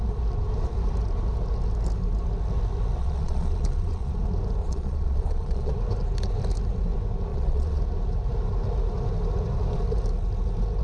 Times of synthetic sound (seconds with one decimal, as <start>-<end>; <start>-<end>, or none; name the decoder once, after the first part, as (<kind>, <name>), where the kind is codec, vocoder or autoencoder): 3.0-4.1 (vocoder, Vocos); 4.6-5.7; 7.3-7.8